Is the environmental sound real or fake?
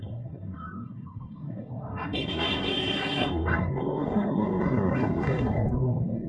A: fake